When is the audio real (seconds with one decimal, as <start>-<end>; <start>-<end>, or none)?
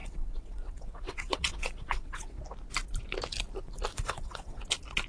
2.4-3.9; 4.6-5.1